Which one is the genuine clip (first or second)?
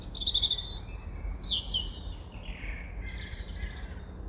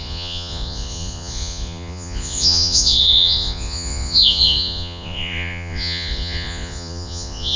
first